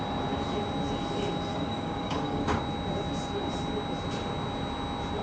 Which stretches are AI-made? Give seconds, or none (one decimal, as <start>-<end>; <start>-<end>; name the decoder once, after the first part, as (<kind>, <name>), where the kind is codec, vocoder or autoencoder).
1.5-2.6 (codec, DAC)